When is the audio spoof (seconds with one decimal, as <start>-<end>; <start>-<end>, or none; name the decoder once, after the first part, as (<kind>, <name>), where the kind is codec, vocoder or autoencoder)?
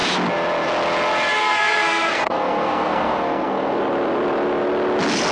1.4-3.8 (codec, SNAC)